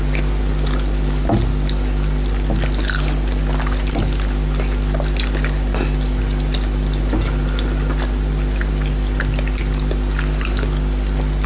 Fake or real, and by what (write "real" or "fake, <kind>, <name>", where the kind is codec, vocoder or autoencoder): real